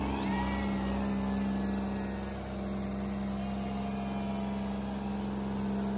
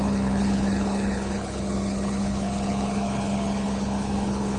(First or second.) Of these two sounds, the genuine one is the first